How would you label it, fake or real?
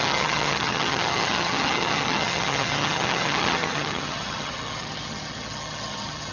fake